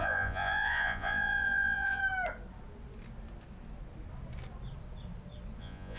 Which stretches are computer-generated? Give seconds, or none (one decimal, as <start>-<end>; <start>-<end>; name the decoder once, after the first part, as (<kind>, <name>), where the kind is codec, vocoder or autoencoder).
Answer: 0.0-2.0 (vocoder, Vocos); 5.6-6.0